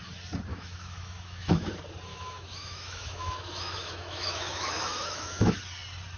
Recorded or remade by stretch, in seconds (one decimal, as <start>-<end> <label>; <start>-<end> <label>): 0.0-0.5 recorded; 0.5-1.7 remade; 1.7-2.1 recorded; 2.1-5.6 remade; 5.6-6.2 recorded